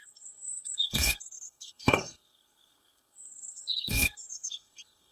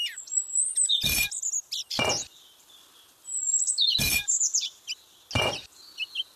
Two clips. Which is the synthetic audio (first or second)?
first